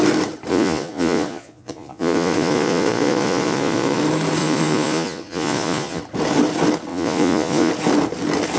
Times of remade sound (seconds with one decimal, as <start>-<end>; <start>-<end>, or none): 0.5-4.0; 4.4-6.0; 6.9-7.7

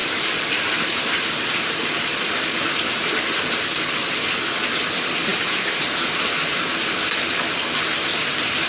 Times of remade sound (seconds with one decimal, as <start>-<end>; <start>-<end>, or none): 0.0-1.9; 5.3-6.0